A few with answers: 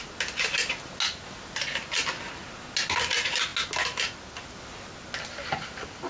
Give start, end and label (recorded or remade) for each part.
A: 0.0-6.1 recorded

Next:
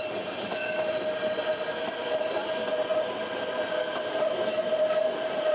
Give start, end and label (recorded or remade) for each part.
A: 0.0-5.5 recorded